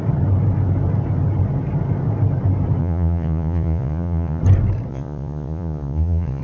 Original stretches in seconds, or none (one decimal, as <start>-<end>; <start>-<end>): 0.0-2.8; 4.4-4.9